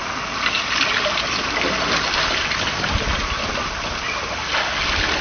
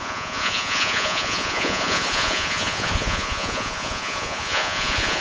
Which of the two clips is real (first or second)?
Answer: first